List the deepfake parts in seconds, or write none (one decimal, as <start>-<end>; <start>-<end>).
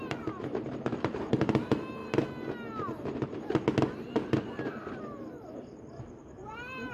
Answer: 0.0-2.0; 5.0-6.9